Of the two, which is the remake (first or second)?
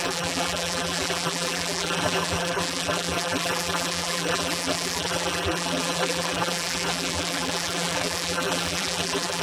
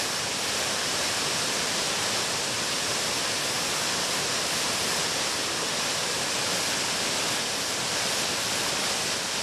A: first